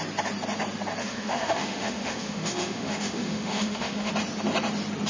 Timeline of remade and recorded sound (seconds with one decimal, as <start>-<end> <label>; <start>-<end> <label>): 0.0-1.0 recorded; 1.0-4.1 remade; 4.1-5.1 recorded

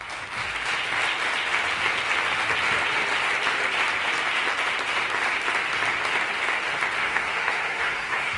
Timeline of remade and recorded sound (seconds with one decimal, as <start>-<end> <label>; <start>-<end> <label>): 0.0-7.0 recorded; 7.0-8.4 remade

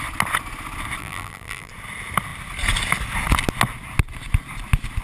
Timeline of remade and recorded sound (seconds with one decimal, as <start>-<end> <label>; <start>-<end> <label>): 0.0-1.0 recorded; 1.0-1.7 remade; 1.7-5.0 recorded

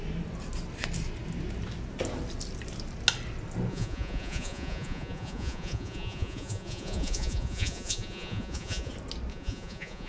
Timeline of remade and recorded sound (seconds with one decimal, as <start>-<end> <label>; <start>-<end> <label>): 0.0-3.7 recorded; 3.7-8.9 remade; 8.9-9.3 recorded; 9.3-10.1 remade

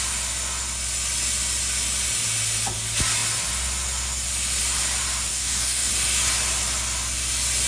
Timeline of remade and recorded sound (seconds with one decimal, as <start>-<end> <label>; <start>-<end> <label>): 0.0-5.3 recorded; 5.3-5.9 remade; 5.9-7.7 recorded

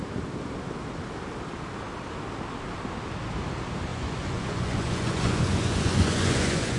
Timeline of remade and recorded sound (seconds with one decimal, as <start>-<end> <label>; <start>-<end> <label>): 0.0-3.9 recorded; 3.9-6.8 remade